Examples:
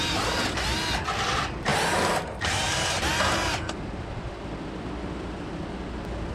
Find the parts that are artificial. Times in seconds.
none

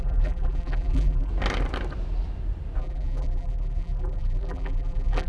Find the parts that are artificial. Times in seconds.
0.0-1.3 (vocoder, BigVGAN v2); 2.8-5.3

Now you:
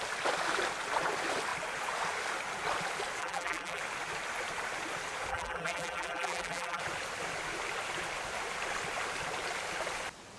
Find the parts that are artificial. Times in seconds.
3.2-3.8 (vocoder, BigVGAN v2); 5.3-6.8